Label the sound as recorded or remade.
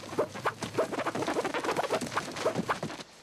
recorded